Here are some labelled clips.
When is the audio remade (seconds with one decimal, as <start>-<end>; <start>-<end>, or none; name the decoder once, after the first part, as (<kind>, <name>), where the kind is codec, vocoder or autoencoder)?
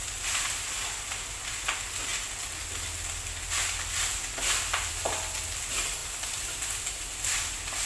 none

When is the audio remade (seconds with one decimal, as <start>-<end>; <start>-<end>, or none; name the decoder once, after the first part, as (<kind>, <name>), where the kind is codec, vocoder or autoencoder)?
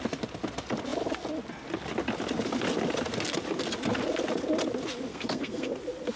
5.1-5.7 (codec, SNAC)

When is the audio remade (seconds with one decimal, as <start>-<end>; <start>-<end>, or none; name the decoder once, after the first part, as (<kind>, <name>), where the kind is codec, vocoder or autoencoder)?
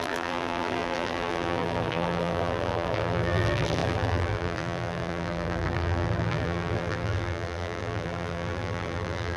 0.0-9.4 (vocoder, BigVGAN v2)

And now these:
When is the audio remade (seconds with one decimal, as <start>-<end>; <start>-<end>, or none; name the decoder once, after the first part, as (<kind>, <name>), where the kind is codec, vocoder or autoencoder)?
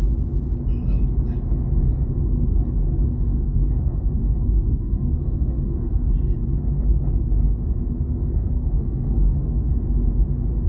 3.1-6.1 (codec, SNAC); 8.2-9.7